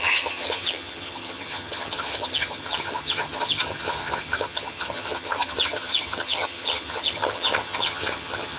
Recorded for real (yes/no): no